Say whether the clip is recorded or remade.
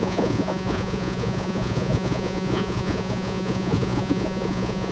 remade